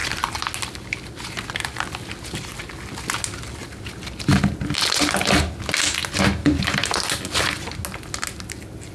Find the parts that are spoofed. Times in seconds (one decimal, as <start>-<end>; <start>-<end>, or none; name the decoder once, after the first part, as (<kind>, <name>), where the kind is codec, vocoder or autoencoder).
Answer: none